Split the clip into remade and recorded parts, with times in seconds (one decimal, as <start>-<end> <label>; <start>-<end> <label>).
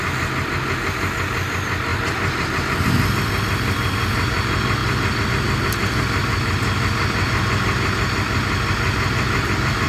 0.0-1.9 recorded; 1.9-2.8 remade; 2.8-4.8 recorded; 4.8-5.3 remade; 5.3-9.9 recorded